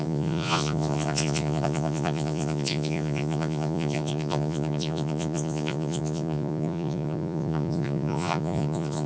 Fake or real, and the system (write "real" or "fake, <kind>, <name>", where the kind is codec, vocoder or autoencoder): fake, vocoder, Vocos